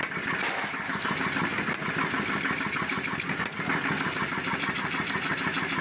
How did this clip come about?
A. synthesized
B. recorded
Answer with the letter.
B